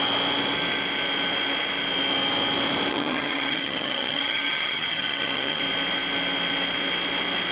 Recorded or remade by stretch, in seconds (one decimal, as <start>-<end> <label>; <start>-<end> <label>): 0.0-2.9 recorded; 2.9-5.6 remade; 5.6-7.5 recorded